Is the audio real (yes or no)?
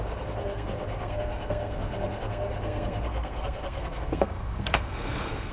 no